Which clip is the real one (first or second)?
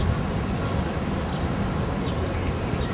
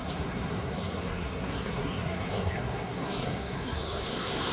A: first